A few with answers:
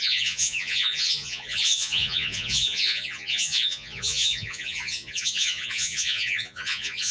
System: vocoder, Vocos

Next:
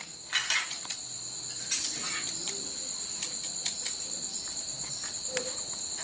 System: none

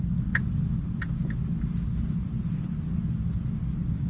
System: none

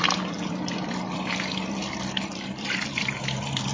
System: vocoder, BigVGAN v2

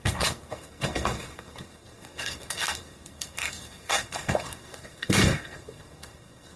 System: codec, SNAC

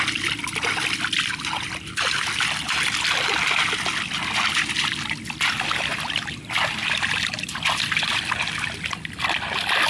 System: none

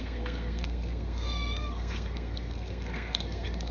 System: codec, SNAC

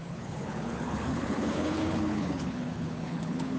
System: codec, HILCodec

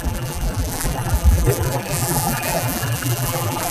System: vocoder, BigVGAN v2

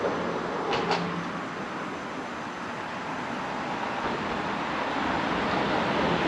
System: none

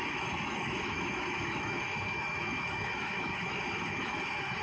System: autoencoder, DAC-VAE